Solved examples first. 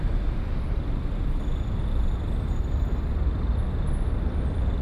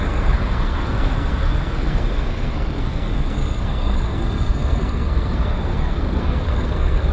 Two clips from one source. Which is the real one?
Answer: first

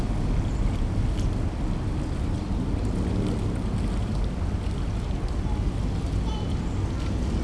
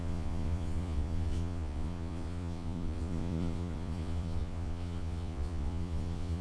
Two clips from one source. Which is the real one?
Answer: first